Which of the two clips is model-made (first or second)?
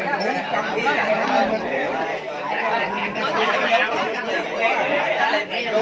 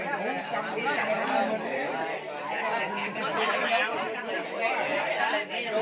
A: first